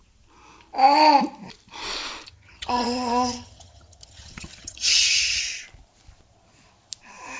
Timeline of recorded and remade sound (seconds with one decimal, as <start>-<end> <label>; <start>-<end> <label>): 0.0-2.3 recorded; 2.3-5.4 remade; 5.4-7.4 recorded